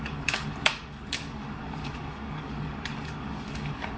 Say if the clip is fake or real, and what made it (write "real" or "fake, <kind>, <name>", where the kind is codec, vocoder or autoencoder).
fake, codec, DAC